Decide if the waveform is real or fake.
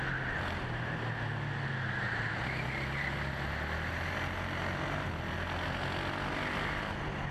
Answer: real